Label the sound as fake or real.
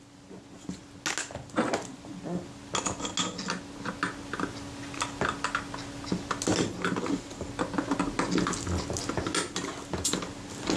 real